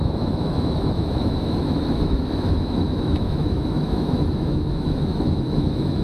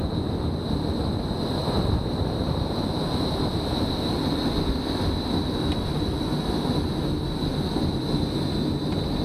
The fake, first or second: first